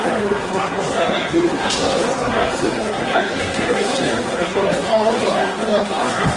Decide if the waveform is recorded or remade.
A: remade